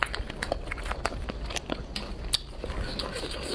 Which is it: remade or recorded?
recorded